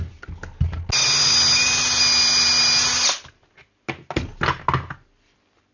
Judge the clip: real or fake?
real